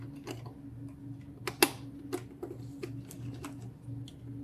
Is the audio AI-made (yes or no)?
no